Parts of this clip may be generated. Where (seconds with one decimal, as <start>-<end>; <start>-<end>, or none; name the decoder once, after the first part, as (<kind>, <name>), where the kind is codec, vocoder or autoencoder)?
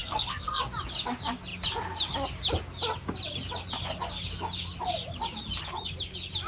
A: 0.0-0.6 (codec, SNAC)